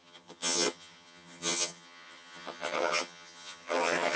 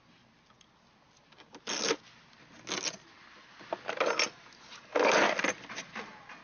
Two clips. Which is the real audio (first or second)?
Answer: second